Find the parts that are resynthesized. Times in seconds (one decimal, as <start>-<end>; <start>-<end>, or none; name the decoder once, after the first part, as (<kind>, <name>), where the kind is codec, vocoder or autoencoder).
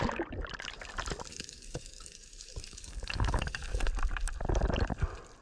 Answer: 1.3-3.9 (codec, DAC)